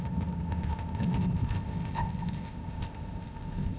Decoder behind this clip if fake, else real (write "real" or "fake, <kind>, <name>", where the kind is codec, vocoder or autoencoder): fake, codec, ZipCodec